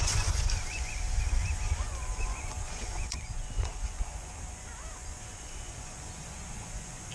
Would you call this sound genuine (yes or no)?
no